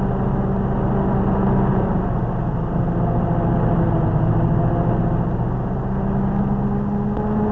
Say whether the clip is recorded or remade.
recorded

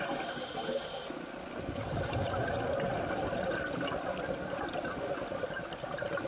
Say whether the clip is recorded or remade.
recorded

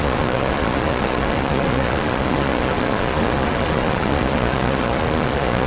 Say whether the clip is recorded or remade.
remade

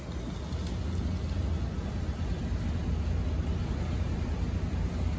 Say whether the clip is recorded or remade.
recorded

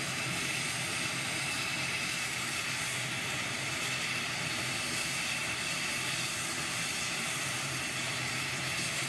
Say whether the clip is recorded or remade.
remade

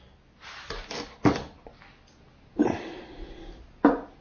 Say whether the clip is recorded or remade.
recorded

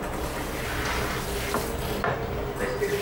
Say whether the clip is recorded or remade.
recorded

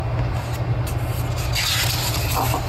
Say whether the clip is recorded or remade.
recorded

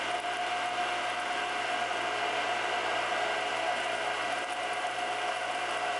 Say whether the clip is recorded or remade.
recorded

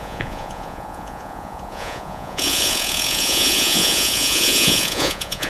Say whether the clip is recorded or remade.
remade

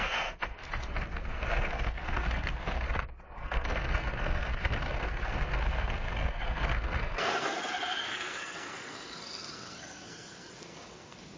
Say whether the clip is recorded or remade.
remade